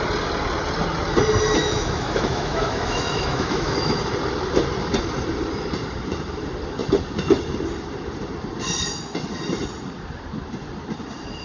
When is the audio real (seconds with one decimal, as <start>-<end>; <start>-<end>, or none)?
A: 0.0-1.6; 4.0-11.4